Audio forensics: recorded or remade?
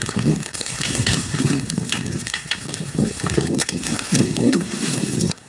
remade